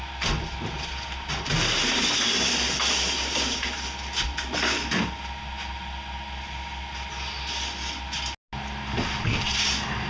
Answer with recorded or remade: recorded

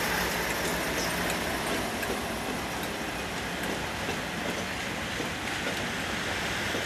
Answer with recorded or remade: recorded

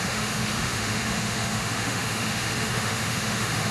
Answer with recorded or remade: remade